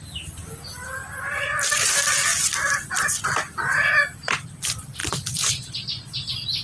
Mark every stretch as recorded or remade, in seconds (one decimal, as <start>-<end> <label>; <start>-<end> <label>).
0.0-6.6 recorded